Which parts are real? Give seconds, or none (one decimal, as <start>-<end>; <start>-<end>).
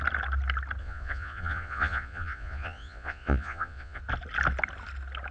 0.0-0.8; 4.0-5.3